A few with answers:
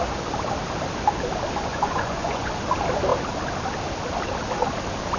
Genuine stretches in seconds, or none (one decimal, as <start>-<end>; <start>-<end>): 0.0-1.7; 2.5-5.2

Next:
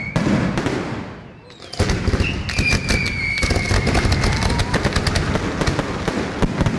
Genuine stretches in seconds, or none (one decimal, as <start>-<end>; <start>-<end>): 0.0-6.8

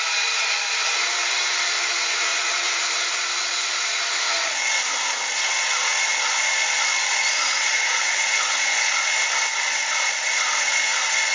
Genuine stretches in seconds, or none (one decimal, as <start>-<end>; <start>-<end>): 0.0-7.6; 9.0-11.3